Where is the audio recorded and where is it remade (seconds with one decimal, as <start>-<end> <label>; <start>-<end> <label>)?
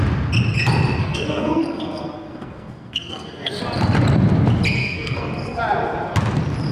0.0-1.0 recorded; 1.0-3.6 remade; 3.6-4.8 recorded; 4.8-5.6 remade; 5.6-6.7 recorded